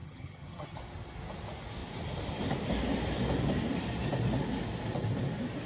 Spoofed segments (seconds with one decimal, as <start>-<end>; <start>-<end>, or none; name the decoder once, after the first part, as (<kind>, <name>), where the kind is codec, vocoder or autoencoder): 0.0-0.8 (vocoder, HiFi-GAN)